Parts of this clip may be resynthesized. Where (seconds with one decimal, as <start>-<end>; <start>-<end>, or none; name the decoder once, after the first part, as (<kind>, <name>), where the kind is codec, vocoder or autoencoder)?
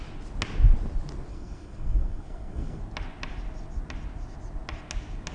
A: 1.3-2.8 (codec, SNAC)